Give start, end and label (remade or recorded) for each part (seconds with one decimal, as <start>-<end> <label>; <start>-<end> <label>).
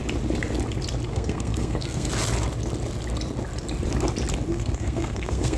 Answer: 0.0-1.1 recorded; 1.1-2.1 remade; 2.1-4.5 recorded; 4.5-5.6 remade